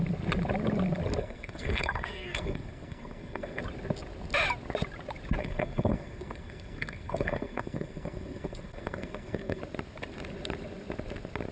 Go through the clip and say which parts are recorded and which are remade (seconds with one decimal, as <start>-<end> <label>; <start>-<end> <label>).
0.0-1.2 recorded; 1.2-3.6 remade; 3.6-5.4 recorded; 5.4-9.6 remade; 9.6-11.5 recorded